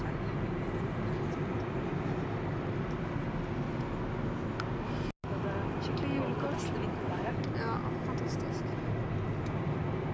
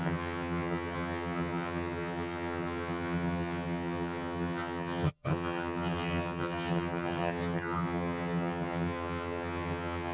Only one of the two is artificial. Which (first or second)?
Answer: second